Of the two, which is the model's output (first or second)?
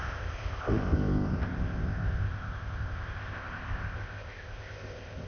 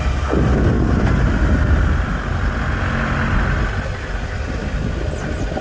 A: first